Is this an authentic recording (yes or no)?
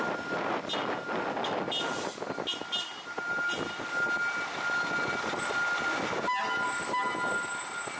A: yes